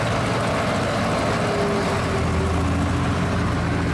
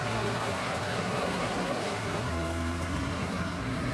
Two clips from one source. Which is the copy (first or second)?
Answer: second